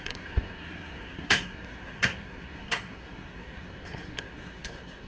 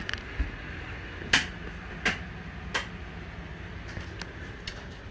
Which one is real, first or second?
second